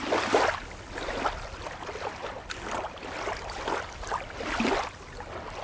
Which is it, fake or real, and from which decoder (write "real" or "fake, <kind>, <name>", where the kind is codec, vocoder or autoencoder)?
real